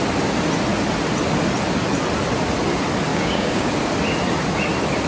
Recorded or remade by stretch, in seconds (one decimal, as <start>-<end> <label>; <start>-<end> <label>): 0.0-3.1 recorded; 3.1-3.7 remade; 3.7-5.1 recorded